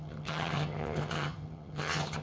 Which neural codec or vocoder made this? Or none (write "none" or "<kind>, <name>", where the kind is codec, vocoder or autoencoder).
vocoder, HiFi-GAN